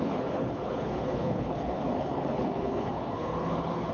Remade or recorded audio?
remade